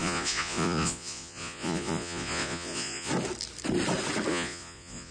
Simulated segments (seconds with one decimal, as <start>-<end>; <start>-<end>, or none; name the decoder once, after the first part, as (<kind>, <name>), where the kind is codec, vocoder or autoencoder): 0.0-3.1 (vocoder, Vocos); 4.3-5.1